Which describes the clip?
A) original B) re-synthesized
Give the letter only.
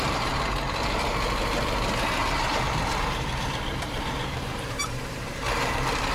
B